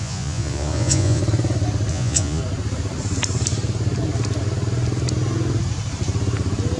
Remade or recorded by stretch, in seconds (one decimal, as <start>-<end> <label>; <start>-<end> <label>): 0.0-1.2 remade; 1.2-1.9 recorded; 1.9-2.4 remade; 2.4-6.8 recorded